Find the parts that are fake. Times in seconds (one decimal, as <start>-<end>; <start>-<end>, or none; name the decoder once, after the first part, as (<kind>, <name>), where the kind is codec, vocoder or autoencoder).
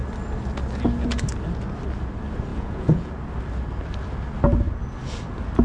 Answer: 2.5-3.1 (vocoder, Vocos)